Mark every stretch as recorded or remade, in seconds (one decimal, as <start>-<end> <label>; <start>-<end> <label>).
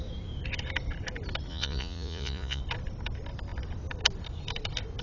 0.0-1.5 recorded; 1.5-2.6 remade; 2.6-5.0 recorded